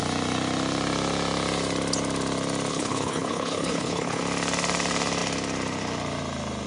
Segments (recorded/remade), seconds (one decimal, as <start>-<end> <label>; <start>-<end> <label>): 0.0-2.7 recorded; 2.7-4.2 remade; 4.2-6.7 recorded